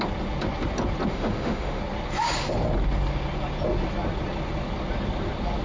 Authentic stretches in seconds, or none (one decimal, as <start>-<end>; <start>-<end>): 0.0-1.1; 1.8-5.6